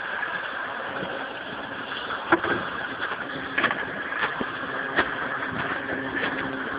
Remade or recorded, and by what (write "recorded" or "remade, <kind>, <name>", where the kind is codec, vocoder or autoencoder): remade, vocoder, BigVGAN v2